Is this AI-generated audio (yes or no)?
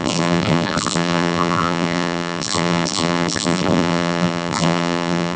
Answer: yes